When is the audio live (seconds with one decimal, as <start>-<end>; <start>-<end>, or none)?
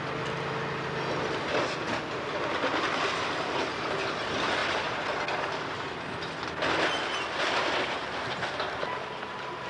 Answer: 0.0-9.7